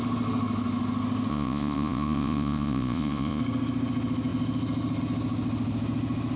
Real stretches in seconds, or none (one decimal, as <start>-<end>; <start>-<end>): 0.0-1.3; 3.4-6.4